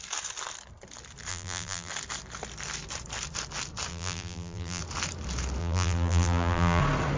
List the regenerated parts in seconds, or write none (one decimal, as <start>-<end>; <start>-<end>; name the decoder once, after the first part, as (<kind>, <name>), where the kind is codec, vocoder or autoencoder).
1.3-1.9 (vocoder, BigVGAN v2); 3.9-4.8; 5.6-6.8